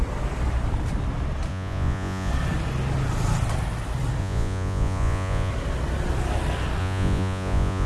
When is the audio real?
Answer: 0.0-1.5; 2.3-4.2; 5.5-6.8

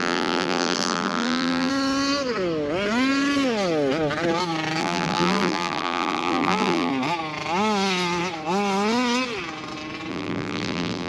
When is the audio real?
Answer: 1.7-4.8; 6.9-10.1

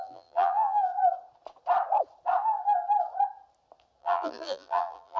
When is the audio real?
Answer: 0.9-4.0

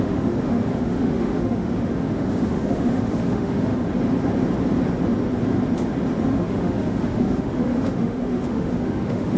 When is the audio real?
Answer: 3.7-6.2

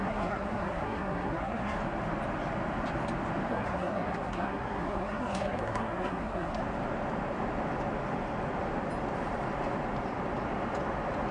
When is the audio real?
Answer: 1.8-3.5; 6.6-11.3

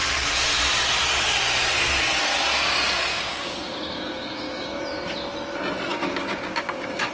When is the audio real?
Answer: 0.0-3.1; 4.8-5.9

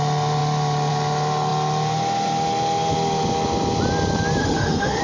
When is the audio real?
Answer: 0.0-4.4